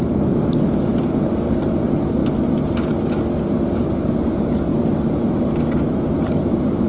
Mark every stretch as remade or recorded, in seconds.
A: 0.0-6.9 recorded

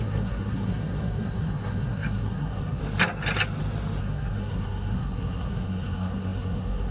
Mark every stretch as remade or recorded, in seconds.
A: 0.0-2.8 remade; 2.8-4.0 recorded; 4.0-6.9 remade